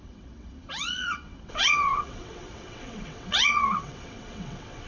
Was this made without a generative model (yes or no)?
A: no